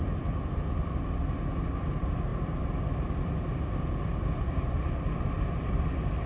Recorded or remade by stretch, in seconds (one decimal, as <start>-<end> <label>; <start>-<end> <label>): 0.0-6.3 recorded